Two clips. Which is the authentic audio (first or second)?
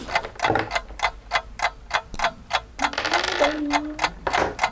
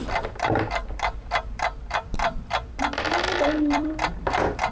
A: first